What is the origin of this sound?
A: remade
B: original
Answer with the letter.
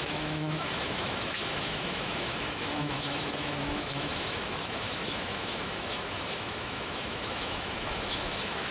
A